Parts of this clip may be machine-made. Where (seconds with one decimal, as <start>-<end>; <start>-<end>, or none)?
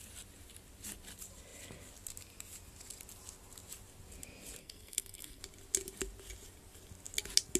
4.6-5.4